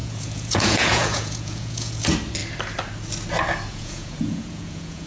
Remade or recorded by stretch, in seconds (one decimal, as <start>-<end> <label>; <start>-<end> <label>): 0.0-2.0 remade; 2.0-3.7 recorded; 3.7-5.1 remade